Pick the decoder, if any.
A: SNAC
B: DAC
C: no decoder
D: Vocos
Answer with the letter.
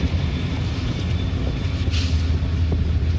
C